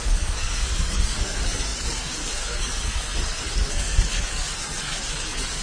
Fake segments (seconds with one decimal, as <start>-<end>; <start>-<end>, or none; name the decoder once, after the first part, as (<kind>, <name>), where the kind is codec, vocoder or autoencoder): 0.0-5.6 (codec, SNAC)